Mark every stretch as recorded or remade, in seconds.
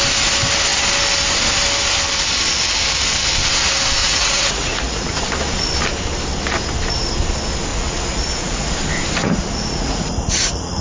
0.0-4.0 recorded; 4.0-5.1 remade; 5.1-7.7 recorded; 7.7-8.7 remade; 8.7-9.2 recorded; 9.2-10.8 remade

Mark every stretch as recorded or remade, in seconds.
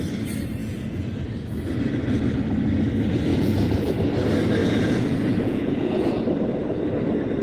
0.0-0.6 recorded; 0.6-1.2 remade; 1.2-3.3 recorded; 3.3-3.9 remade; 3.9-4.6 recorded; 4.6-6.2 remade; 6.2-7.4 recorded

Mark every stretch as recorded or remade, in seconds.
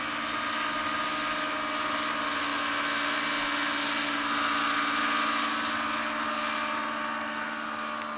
0.0-8.2 recorded